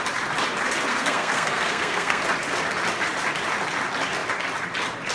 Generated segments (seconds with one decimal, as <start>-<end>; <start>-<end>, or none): 0.9-2.2